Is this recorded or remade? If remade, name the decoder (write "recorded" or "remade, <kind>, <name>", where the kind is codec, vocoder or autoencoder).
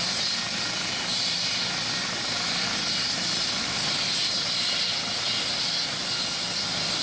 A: recorded